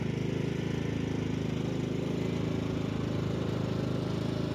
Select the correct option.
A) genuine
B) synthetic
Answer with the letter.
A